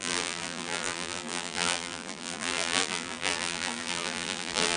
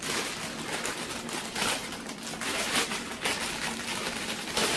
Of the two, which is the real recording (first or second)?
second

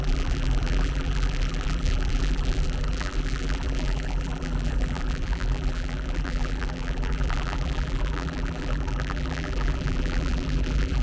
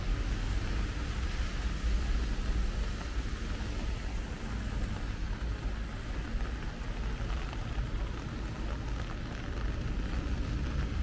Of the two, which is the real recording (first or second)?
second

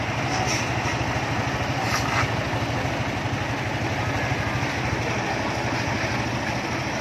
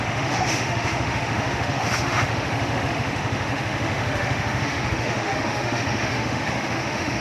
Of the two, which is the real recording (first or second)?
first